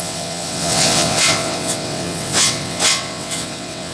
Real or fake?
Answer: fake